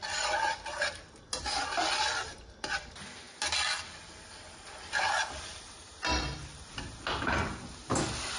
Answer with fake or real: real